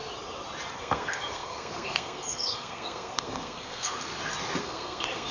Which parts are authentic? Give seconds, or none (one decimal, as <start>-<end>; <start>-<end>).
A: 0.0-0.8; 4.1-4.6